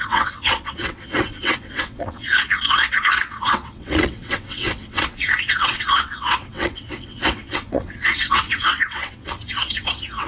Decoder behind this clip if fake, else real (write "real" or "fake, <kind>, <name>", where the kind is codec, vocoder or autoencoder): fake, vocoder, WaveNeXt